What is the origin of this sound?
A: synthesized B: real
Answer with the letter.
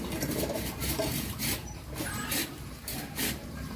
A